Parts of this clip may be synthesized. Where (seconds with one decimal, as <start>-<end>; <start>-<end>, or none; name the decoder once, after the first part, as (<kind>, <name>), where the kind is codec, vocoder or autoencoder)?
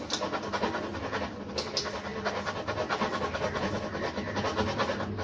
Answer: none